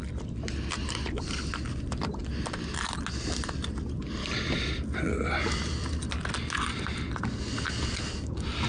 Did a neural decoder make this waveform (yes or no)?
no